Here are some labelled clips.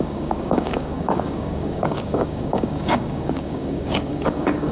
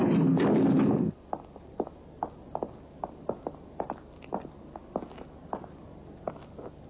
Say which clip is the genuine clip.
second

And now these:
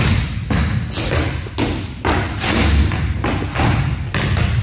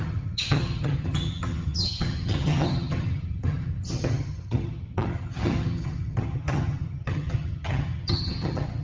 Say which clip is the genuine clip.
first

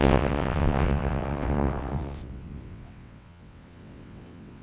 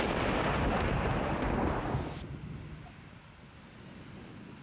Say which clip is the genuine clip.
second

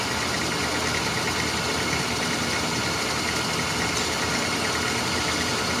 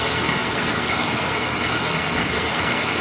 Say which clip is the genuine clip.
first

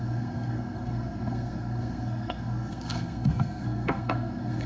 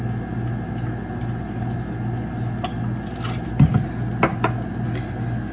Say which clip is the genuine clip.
second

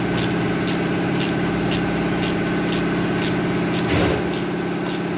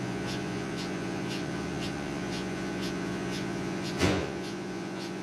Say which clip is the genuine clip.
first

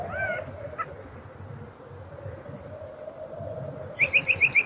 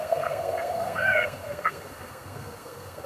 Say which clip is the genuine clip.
first